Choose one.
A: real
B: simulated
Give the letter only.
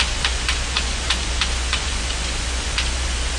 B